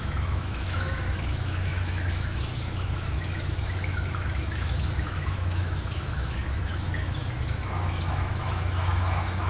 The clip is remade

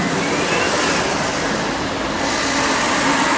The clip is recorded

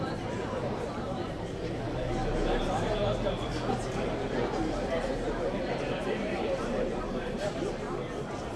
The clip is remade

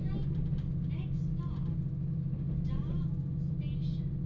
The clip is recorded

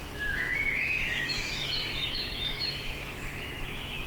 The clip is remade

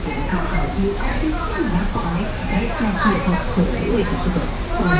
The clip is remade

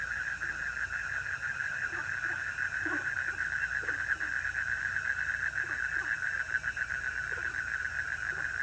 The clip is recorded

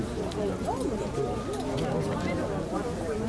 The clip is recorded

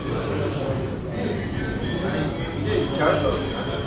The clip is recorded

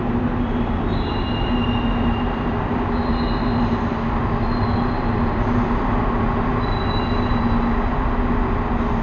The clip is recorded